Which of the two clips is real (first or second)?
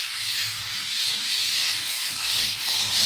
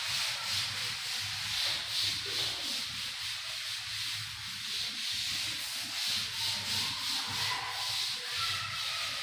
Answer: second